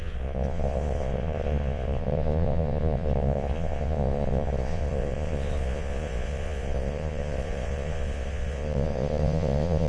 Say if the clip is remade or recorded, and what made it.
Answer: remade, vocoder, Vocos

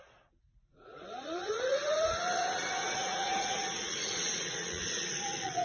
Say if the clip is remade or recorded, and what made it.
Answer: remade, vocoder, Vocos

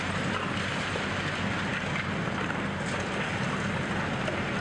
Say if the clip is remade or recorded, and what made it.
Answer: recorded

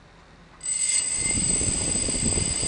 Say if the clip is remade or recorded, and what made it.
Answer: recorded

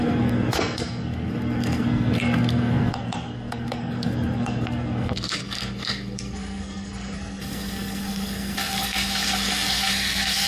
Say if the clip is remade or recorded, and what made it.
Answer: remade, codec, SNAC